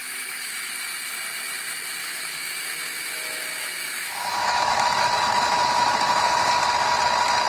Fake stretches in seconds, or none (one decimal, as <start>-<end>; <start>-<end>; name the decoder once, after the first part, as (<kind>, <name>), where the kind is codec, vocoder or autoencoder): 0.0-0.7 (autoencoder, DAC-VAE); 2.0-6.5